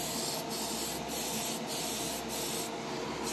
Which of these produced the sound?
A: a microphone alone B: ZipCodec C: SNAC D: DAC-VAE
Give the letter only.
A